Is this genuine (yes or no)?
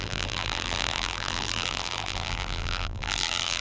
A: no